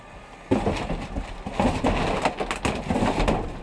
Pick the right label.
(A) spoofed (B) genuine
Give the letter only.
B